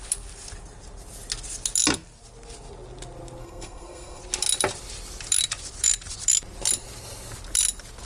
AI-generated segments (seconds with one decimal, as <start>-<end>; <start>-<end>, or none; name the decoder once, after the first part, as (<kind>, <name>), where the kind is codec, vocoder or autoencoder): 3.4-4.2 (codec, SNAC)